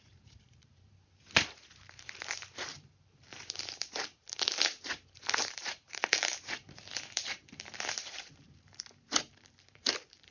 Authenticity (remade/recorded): remade